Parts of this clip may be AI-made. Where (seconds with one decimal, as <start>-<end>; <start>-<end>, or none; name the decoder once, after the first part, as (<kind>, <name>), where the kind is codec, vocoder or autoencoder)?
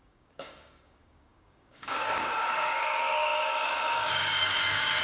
0.0-5.0 (codec, DAC)